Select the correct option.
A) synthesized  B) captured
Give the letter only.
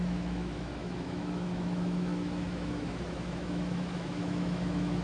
A